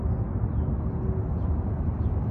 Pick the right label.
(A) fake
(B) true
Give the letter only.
B